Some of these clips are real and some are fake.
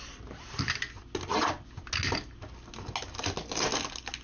real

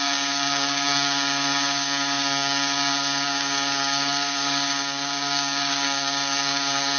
fake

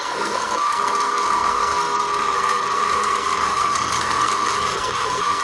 fake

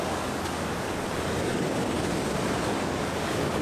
fake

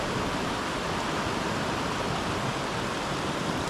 real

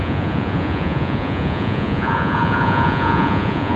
fake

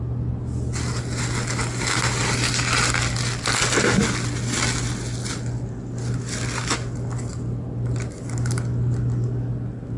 real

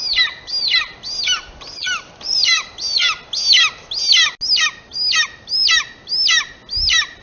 real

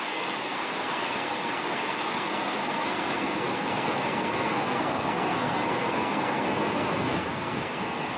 fake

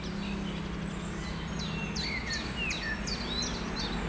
real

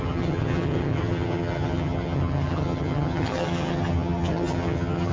fake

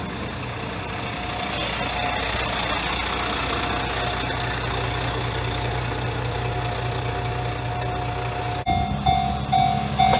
real